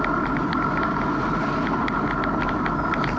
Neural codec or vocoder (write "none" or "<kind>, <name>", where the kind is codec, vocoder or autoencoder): none